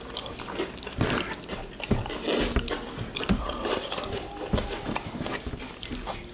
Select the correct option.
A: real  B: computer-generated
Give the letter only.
A